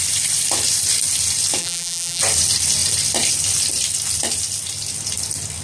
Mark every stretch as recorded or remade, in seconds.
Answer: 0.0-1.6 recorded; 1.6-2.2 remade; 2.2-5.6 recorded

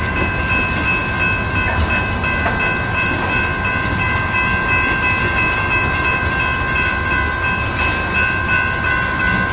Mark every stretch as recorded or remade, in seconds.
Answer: 0.0-9.5 recorded

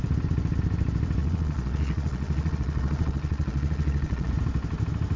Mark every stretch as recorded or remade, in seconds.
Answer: 0.0-1.2 recorded; 1.2-4.3 remade; 4.3-5.2 recorded